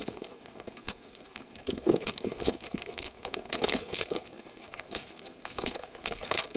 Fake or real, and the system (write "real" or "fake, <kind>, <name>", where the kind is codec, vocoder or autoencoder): fake, codec, SNAC